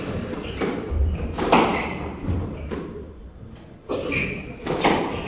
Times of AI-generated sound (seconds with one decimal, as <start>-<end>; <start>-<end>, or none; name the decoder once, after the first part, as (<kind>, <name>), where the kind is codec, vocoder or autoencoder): none